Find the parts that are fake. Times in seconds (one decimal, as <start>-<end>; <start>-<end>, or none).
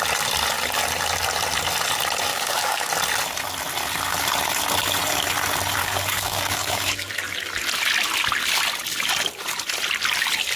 2.3-2.9; 5.8-7.1